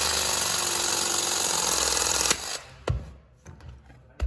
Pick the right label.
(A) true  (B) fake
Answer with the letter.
A